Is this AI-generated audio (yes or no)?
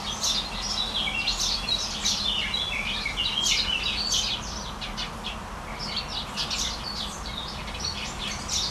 no